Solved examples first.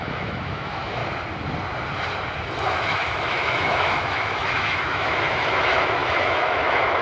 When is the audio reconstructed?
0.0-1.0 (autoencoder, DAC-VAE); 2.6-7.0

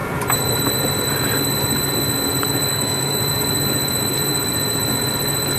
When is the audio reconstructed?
2.7-3.2 (autoencoder, DAC-VAE)